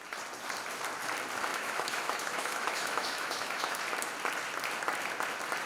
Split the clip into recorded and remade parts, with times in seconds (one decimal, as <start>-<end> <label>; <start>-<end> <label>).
0.0-1.5 recorded; 1.5-3.8 remade; 3.8-5.7 recorded